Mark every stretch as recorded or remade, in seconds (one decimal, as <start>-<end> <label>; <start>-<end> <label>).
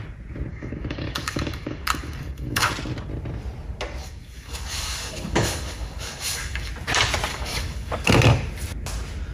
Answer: 0.0-0.5 recorded; 0.5-2.7 remade; 2.7-4.0 recorded; 4.0-6.7 remade; 6.7-7.3 recorded; 7.3-7.9 remade; 7.9-9.3 recorded